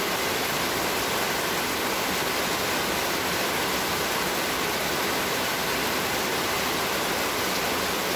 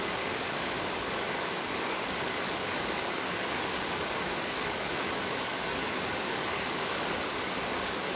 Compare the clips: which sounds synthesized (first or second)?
second